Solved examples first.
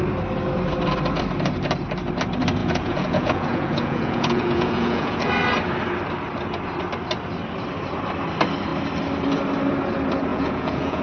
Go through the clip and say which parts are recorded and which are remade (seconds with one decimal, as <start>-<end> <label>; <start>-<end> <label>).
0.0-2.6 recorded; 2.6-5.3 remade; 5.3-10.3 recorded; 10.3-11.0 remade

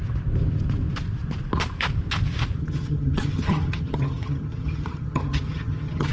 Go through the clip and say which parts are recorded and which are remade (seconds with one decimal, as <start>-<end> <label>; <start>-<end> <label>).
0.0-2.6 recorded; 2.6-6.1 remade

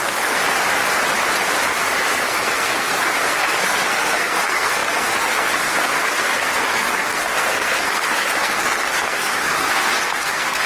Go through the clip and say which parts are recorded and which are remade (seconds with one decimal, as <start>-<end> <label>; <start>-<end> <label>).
0.0-0.4 remade; 0.4-1.7 recorded; 1.7-10.7 remade

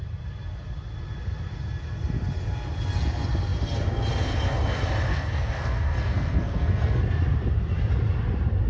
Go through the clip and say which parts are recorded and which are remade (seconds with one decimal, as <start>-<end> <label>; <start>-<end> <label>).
0.0-5.1 recorded; 5.1-7.0 remade; 7.0-8.7 recorded

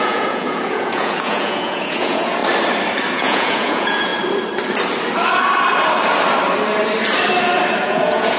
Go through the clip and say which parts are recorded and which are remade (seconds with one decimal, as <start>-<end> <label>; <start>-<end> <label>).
0.0-2.4 remade; 2.4-3.1 recorded; 3.1-4.1 remade; 4.1-7.8 recorded; 7.8-8.4 remade

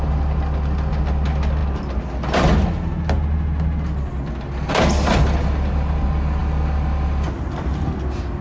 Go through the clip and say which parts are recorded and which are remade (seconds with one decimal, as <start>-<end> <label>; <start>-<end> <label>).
0.0-8.4 recorded

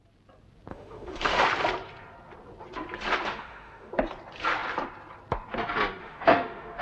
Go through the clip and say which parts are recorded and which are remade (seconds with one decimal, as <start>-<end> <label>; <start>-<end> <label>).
0.0-0.7 recorded; 0.7-1.4 remade; 1.4-3.3 recorded; 3.3-3.9 remade; 3.9-6.0 recorded; 6.0-6.8 remade

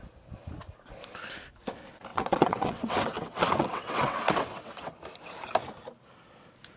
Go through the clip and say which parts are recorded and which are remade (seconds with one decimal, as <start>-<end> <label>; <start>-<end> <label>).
0.0-2.1 recorded; 2.1-4.9 remade; 4.9-6.8 recorded